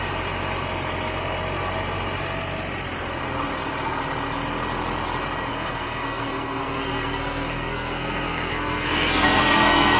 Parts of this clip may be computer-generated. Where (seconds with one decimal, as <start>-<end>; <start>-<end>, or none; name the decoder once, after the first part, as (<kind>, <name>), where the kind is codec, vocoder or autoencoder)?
5.5-10.0 (codec, SNAC)